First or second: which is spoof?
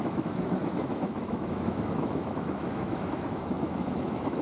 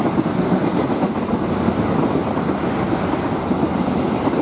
first